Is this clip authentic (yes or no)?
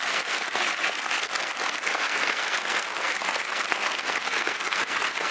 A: no